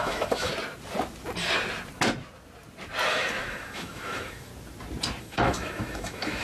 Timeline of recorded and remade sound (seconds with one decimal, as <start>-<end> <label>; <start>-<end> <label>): 0.0-0.5 remade; 0.5-3.1 recorded; 3.1-4.5 remade; 4.5-5.2 recorded; 5.2-6.4 remade